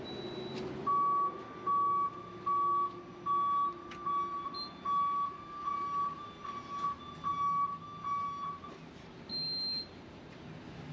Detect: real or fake real